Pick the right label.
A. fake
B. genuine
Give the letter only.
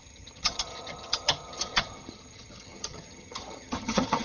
A